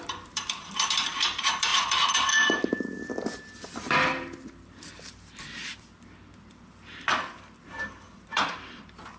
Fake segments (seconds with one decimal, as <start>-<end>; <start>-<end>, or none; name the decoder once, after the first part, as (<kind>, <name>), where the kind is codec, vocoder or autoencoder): 0.0-9.2 (vocoder, BigVGAN v2)